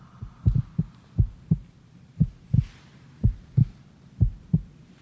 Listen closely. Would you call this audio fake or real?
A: real